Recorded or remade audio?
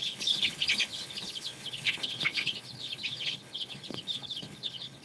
remade